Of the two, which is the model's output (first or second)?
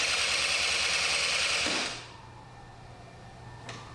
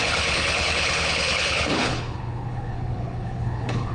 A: second